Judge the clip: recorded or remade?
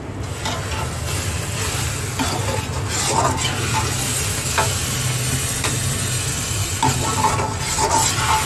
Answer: recorded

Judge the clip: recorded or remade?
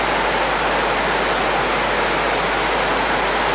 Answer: recorded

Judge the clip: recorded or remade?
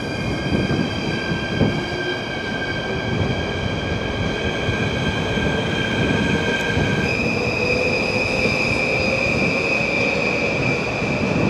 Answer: recorded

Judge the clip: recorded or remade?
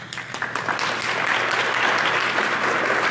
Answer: recorded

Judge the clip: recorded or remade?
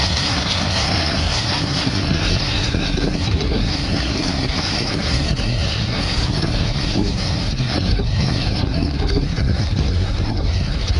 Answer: remade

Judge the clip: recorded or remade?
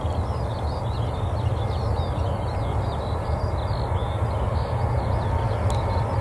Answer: recorded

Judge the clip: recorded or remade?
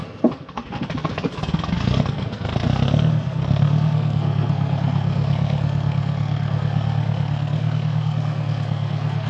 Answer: remade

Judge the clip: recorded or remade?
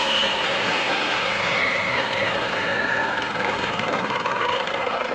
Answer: remade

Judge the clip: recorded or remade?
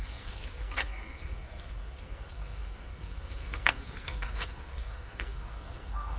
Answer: remade